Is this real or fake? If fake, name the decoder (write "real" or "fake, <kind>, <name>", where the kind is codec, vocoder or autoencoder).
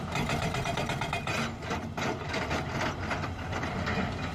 real